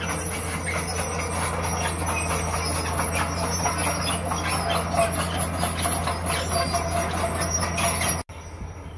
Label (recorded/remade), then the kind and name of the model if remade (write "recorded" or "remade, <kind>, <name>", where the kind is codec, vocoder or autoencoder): recorded